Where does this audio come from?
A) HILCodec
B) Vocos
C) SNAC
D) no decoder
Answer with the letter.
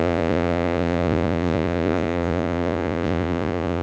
B